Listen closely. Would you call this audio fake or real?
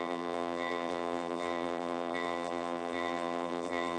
fake